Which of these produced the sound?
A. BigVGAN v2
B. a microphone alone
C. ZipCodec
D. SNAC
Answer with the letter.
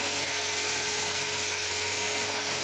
D